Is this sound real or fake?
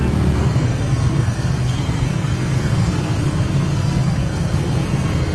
fake